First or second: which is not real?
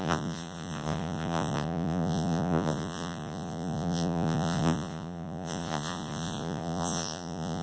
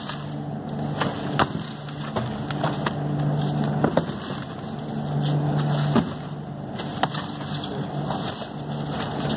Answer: first